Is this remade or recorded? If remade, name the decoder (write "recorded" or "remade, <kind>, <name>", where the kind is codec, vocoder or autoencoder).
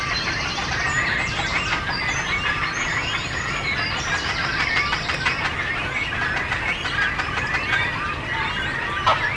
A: recorded